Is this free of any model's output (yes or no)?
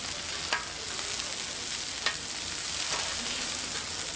yes